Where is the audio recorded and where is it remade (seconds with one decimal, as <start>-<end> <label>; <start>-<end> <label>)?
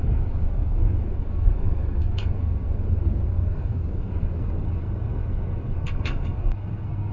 0.0-7.1 remade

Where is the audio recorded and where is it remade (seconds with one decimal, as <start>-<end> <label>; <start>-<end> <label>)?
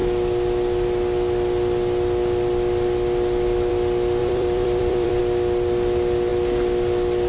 0.0-4.2 recorded; 4.2-5.2 remade; 5.2-7.3 recorded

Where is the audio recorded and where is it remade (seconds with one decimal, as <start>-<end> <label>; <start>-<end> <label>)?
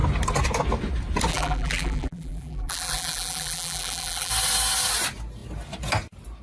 0.0-1.3 recorded; 1.3-4.3 remade; 4.3-6.4 recorded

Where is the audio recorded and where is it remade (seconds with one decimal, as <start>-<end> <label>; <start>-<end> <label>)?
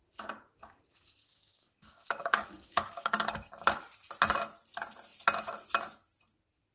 0.0-1.2 recorded; 1.2-3.5 remade; 3.5-6.7 recorded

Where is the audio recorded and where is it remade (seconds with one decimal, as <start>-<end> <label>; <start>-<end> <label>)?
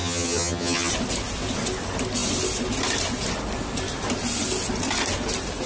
0.0-0.9 remade; 0.9-5.7 recorded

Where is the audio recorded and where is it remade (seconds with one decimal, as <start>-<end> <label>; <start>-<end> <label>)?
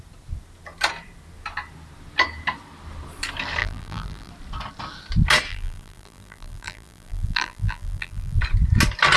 0.0-3.6 recorded; 3.6-4.3 remade; 4.3-5.5 recorded; 5.5-8.4 remade; 8.4-9.2 recorded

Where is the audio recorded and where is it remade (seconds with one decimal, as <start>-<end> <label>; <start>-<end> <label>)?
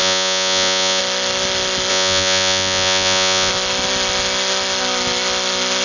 0.0-1.0 remade; 1.0-1.9 recorded; 1.9-3.5 remade; 3.5-5.8 recorded